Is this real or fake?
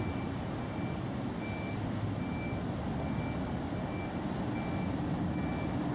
real